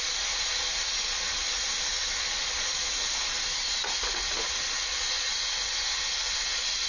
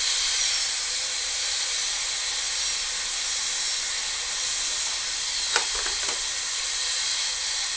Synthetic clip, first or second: first